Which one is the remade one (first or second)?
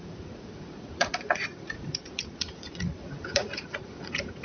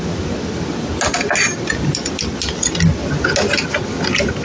first